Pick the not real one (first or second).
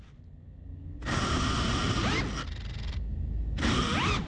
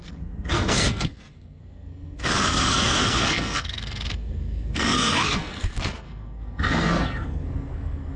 second